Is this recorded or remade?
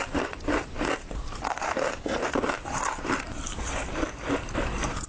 remade